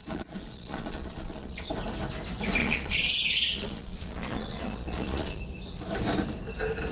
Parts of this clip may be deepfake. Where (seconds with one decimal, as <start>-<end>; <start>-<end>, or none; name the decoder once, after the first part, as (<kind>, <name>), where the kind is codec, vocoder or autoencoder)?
0.0-1.7 (vocoder, Vocos); 2.6-5.4